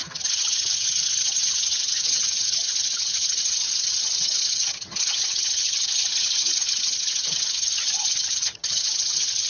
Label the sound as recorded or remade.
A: remade